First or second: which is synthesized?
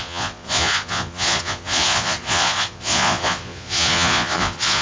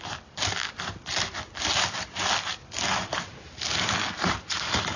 first